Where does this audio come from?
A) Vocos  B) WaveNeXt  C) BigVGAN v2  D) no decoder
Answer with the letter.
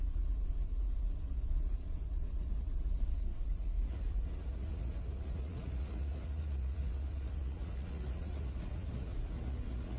A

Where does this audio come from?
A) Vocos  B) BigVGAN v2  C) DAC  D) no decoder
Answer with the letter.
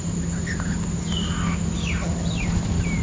D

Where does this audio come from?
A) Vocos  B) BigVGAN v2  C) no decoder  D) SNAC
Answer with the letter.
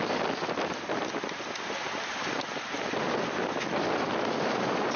C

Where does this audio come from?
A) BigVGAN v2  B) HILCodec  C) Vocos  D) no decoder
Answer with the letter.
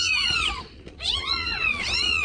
C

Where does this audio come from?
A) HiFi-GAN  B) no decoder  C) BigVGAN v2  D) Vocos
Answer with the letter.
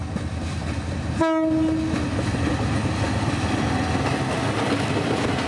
B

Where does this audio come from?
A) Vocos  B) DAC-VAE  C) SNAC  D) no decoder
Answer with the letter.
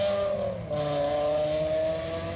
D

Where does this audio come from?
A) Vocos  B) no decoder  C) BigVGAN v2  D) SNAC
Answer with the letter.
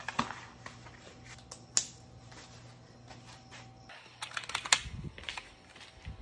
B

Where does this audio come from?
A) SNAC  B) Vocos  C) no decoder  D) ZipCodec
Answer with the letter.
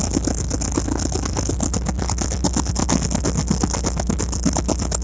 C